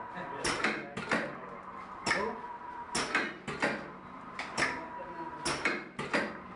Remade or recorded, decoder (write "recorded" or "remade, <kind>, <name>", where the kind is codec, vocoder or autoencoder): recorded